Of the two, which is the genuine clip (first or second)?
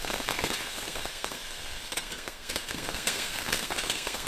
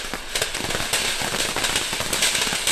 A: second